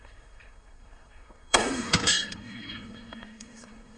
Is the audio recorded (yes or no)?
no